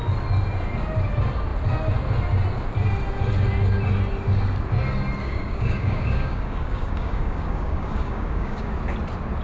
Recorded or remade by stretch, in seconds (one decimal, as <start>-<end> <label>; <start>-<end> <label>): 0.0-5.2 recorded; 5.2-8.7 remade; 8.7-9.4 recorded